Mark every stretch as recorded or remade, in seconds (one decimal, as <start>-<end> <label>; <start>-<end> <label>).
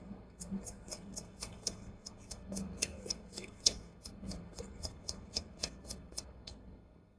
0.0-7.2 remade